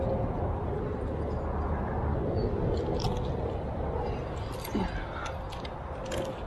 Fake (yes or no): no